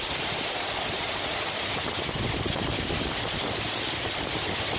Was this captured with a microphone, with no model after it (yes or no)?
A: yes